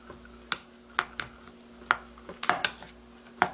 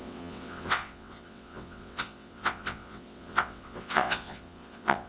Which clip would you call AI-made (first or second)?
second